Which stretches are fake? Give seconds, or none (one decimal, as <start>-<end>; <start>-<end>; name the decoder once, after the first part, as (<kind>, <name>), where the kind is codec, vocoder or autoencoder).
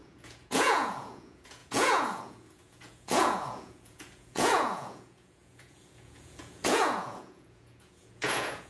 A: 0.0-8.7 (vocoder, Vocos)